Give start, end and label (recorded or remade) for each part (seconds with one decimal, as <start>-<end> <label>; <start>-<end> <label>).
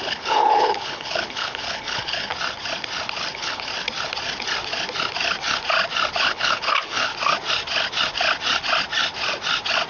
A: 0.0-2.3 remade; 2.3-3.3 recorded; 3.3-3.7 remade; 3.7-6.2 recorded; 6.2-7.1 remade; 7.1-9.9 recorded